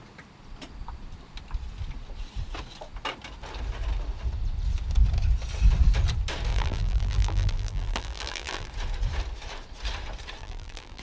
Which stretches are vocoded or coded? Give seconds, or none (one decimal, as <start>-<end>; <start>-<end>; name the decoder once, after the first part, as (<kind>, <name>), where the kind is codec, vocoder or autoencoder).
6.5-8.7 (vocoder, BigVGAN v2); 10.4-11.0